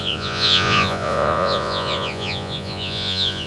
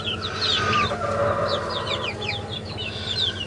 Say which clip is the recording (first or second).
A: second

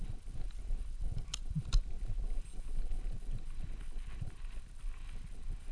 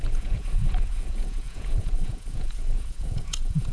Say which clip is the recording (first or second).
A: first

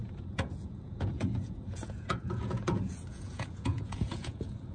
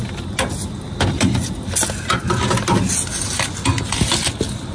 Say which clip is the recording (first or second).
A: second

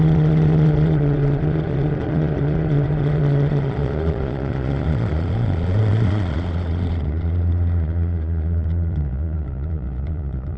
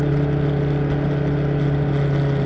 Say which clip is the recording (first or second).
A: second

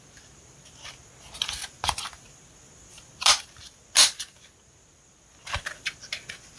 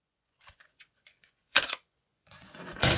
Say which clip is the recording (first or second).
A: first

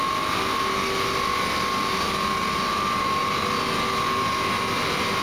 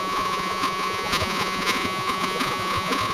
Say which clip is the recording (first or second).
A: first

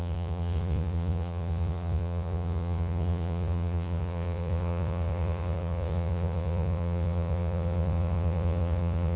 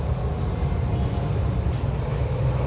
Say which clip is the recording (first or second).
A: second